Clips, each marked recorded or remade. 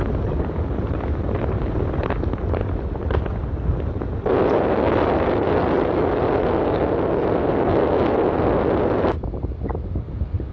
recorded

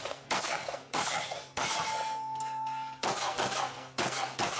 remade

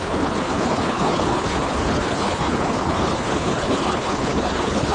remade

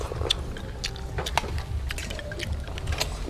recorded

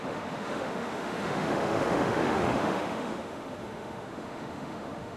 remade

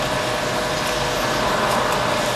recorded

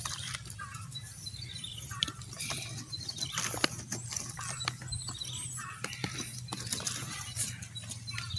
recorded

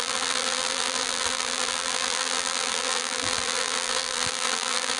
remade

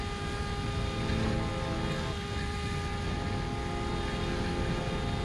recorded